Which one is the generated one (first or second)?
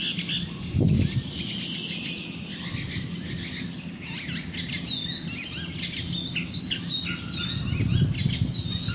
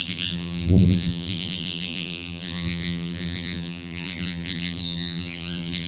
second